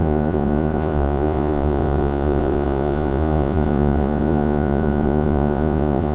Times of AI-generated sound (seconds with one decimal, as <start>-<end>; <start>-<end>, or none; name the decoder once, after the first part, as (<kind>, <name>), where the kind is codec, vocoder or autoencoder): 0.0-6.1 (vocoder, Vocos)

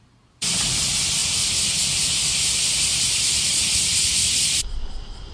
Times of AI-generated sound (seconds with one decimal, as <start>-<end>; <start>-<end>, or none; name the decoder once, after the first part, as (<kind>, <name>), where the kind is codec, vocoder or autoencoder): none

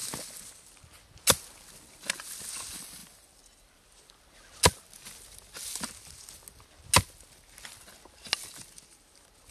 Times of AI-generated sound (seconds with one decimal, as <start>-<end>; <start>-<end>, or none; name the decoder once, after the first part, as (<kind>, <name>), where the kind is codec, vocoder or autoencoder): none